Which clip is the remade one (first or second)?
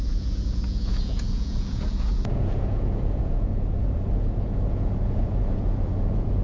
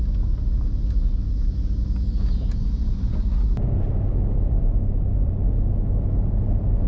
first